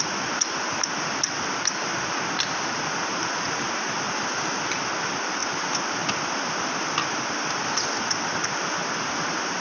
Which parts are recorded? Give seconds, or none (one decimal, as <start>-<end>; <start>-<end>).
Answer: 0.0-9.6